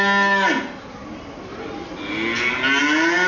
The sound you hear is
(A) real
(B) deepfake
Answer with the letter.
A